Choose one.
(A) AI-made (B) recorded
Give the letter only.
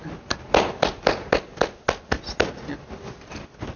B